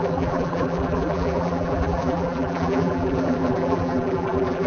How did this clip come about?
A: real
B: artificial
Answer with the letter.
B